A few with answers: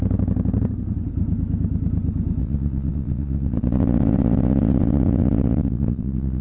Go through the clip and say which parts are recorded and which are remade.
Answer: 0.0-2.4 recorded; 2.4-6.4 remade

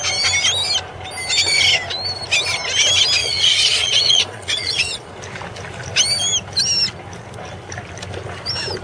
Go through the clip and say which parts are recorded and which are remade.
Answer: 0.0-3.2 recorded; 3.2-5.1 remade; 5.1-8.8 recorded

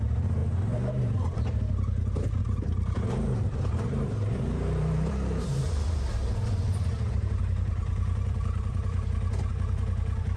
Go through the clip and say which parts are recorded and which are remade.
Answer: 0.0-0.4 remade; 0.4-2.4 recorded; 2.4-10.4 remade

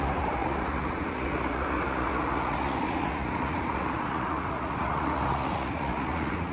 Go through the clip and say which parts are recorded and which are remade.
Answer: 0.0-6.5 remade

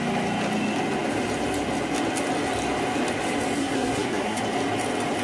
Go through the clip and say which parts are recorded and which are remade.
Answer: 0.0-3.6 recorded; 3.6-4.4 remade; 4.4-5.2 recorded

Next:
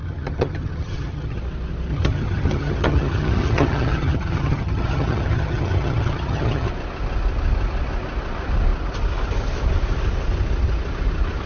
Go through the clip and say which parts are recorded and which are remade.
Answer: 0.0-1.4 remade; 1.4-1.9 recorded; 1.9-6.7 remade; 6.7-11.5 recorded

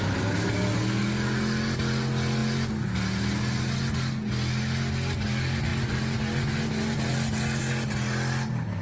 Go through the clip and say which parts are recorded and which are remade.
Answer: 0.0-8.8 recorded

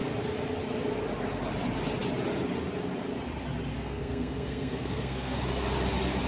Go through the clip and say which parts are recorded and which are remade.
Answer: 0.0-3.7 recorded; 3.7-5.4 remade; 5.4-6.3 recorded